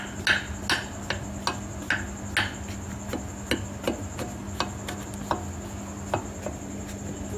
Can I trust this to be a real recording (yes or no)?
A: yes